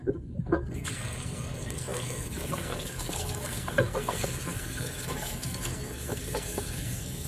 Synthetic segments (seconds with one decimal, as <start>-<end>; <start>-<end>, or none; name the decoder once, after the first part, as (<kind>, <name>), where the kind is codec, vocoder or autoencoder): 0.0-7.3 (codec, SNAC)